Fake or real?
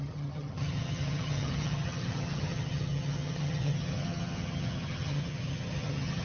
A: fake